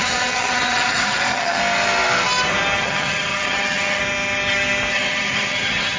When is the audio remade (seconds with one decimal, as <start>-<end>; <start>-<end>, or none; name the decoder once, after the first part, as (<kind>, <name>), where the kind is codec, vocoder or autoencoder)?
0.0-1.6 (vocoder, HiFi-GAN); 2.8-4.0; 4.9-6.0